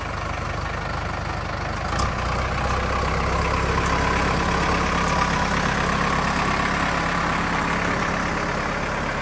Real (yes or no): yes